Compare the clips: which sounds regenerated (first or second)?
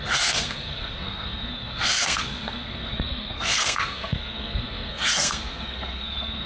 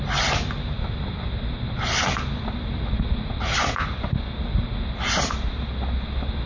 first